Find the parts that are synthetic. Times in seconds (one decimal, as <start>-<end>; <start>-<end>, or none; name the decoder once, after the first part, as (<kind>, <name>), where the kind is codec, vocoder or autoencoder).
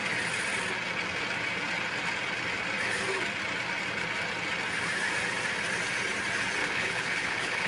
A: 6.6-7.7 (codec, HILCodec)